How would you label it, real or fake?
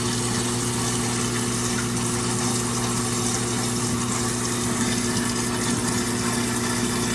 real